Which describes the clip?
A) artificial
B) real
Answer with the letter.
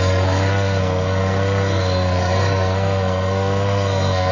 A